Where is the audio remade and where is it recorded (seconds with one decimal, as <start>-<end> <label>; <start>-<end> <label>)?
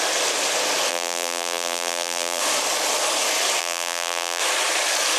0.0-0.9 recorded; 0.9-2.4 remade; 2.4-3.6 recorded; 3.6-4.4 remade; 4.4-5.2 recorded